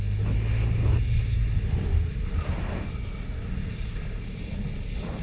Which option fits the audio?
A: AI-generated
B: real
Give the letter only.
B